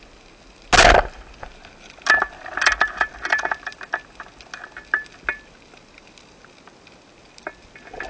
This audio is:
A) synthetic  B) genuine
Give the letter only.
B